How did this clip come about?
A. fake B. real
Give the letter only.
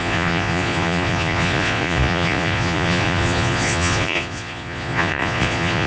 A